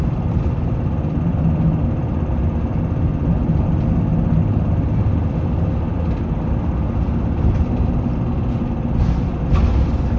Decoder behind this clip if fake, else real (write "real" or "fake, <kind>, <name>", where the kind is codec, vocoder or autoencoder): real